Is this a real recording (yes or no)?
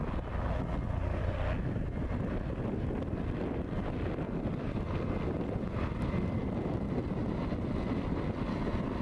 yes